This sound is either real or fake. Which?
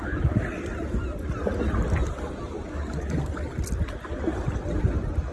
real